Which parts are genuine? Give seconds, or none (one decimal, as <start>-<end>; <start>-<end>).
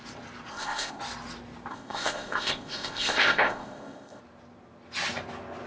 0.0-0.5; 1.0-1.7; 4.2-5.7